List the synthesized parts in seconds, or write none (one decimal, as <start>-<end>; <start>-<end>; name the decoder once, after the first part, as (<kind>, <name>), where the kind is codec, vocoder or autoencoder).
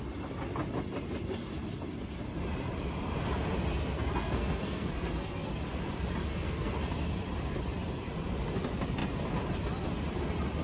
3.8-5.5 (codec, SNAC); 6.2-6.7